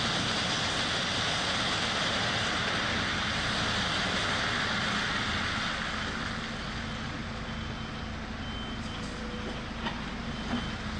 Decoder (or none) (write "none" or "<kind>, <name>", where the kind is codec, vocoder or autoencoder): none